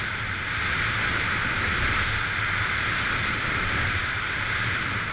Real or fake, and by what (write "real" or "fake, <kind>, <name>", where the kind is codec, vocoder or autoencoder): real